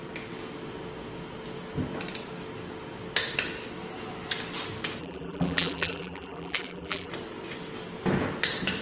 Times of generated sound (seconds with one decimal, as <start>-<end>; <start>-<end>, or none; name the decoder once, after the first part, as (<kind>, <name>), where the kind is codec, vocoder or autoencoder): 5.0-7.1 (vocoder, BigVGAN v2)